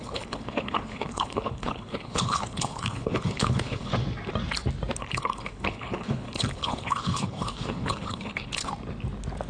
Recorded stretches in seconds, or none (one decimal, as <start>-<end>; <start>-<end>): 3.9-5.0; 8.7-9.5